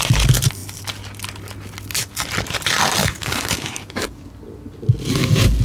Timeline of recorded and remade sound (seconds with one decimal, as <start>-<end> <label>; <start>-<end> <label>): 0.0-3.0 recorded; 3.0-4.3 remade; 4.3-5.6 recorded